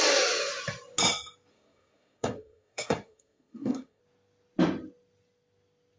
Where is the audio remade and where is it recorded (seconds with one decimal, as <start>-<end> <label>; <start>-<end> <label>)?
0.0-1.5 recorded; 1.5-4.0 remade; 4.0-6.0 recorded